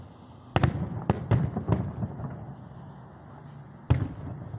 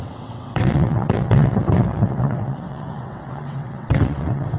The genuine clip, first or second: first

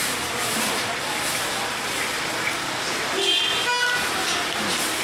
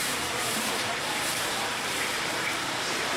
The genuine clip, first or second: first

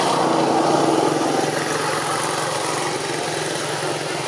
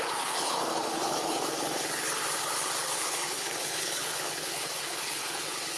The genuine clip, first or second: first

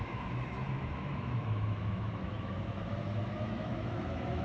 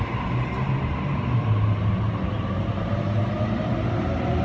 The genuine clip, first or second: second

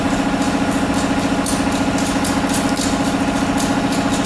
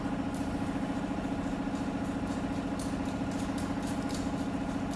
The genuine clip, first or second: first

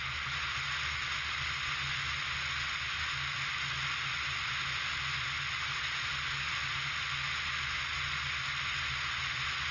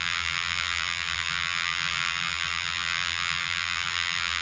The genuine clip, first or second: first